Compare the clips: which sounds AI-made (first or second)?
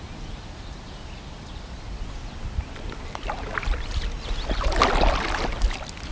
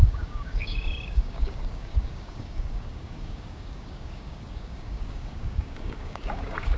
second